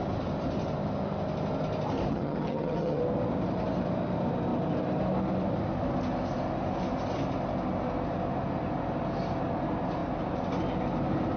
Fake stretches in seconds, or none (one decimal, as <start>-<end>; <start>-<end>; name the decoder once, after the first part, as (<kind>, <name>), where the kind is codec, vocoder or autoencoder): 2.1-3.0 (vocoder, HiFi-GAN)